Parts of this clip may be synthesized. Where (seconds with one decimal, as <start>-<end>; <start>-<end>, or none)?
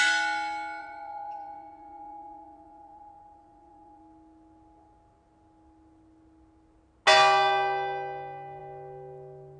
0.8-4.0